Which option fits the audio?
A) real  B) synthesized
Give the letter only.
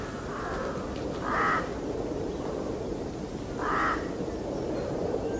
A